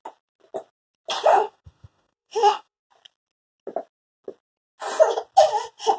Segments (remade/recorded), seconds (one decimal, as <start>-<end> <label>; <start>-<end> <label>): 0.0-1.3 recorded; 1.3-2.8 remade; 2.8-6.0 recorded